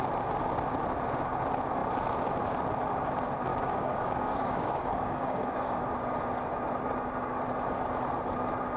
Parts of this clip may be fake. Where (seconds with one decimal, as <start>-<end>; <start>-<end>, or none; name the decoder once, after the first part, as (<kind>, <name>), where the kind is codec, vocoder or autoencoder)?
3.5-5.8 (codec, DAC)